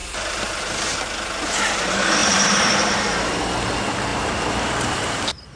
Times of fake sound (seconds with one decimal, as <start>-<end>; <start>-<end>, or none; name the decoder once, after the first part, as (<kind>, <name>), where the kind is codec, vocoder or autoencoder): 2.2-2.9 (vocoder, BigVGAN v2); 4.1-5.6